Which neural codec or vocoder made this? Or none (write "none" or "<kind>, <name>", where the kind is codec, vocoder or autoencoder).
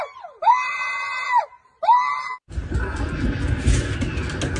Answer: none